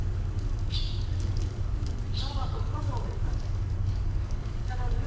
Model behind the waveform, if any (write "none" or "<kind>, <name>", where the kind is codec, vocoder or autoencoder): codec, DAC